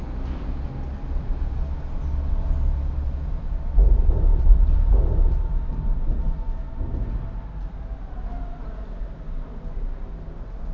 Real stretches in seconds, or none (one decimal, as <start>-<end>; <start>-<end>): 0.0-10.7

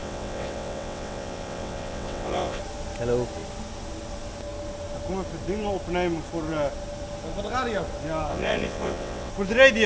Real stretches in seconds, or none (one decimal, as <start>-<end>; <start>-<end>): 2.6-8.3; 9.3-9.9

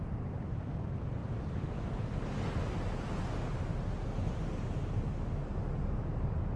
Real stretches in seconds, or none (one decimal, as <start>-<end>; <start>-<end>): 0.0-6.6

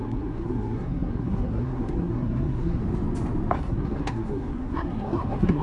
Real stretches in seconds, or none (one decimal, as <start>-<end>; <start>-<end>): 2.8-3.5